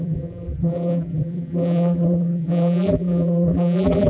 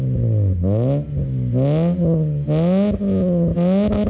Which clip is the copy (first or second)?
first